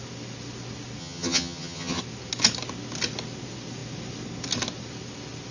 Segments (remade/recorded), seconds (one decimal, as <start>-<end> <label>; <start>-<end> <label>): 0.0-1.0 recorded; 1.0-2.0 remade; 2.0-5.5 recorded